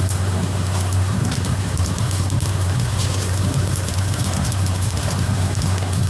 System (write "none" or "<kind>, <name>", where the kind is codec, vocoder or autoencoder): codec, SNAC